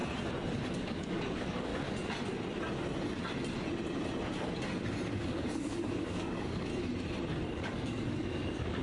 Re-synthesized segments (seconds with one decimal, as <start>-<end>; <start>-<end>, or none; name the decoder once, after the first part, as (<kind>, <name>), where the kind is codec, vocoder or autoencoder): 0.7-1.7 (codec, DAC); 5.1-6.7; 7.5-8.8

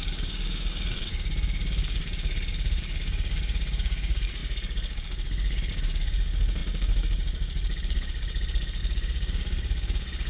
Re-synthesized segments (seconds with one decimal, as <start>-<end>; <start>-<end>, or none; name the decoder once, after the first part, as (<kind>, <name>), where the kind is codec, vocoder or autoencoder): 0.0-10.3 (codec, DAC)

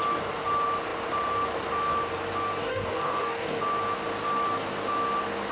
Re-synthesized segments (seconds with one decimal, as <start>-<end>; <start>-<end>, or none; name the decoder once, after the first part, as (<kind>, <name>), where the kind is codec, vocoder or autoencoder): 2.6-3.6 (codec, DAC)

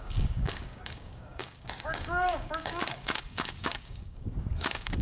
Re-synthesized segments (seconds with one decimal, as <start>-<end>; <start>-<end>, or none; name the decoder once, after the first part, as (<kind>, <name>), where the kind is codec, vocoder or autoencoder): 0.0-5.0 (codec, DAC)

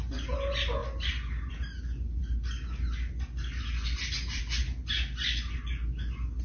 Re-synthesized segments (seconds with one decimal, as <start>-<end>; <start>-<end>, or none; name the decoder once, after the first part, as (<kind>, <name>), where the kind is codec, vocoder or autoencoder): none

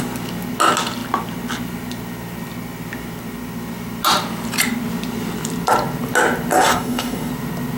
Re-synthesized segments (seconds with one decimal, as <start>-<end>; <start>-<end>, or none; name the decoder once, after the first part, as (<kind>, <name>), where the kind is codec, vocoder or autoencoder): 6.5-7.3 (codec, DAC)

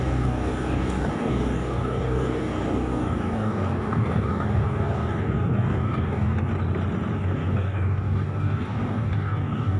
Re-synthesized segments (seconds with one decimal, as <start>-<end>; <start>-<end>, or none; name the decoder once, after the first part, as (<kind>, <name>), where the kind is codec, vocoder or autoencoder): 0.0-6.5 (codec, DAC); 7.1-9.8